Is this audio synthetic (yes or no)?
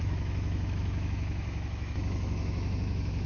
yes